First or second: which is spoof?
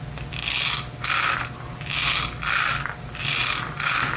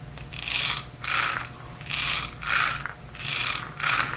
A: second